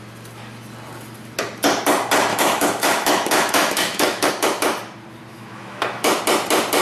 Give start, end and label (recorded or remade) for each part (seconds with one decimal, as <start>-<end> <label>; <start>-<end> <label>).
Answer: 0.0-2.3 recorded; 2.3-4.3 remade; 4.3-5.3 recorded; 5.3-6.2 remade; 6.2-6.8 recorded